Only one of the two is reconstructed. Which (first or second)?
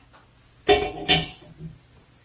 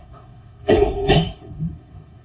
second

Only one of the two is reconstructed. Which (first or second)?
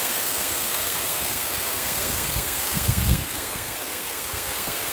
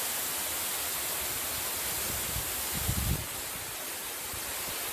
first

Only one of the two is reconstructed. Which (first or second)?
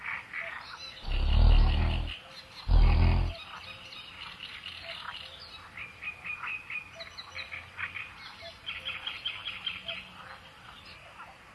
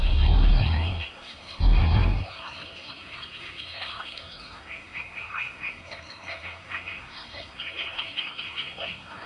second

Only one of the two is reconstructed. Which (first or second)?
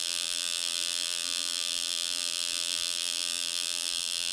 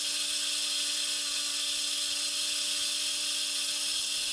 first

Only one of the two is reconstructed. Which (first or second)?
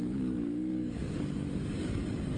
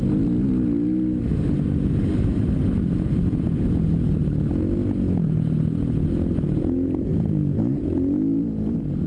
first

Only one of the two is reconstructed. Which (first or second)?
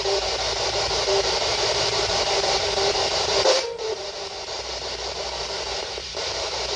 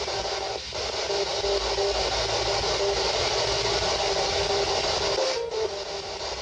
first